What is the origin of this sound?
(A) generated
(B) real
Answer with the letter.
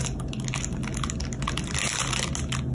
B